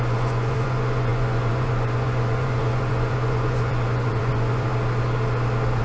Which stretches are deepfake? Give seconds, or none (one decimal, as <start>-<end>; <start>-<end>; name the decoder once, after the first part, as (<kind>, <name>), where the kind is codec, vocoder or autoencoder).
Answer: 0.0-4.7 (vocoder, Vocos)